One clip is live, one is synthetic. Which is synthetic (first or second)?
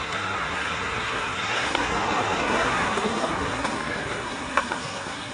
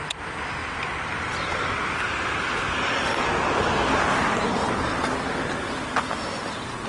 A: first